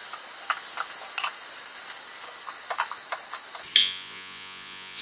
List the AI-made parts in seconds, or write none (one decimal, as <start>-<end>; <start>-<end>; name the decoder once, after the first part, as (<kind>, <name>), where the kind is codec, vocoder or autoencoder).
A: 3.8-5.0 (vocoder, Vocos)